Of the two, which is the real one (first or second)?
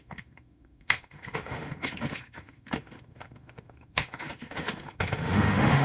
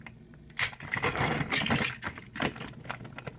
second